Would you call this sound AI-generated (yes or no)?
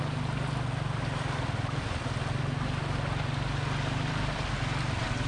no